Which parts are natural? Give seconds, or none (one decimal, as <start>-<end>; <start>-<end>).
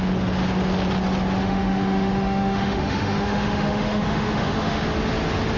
0.0-1.4; 4.8-5.6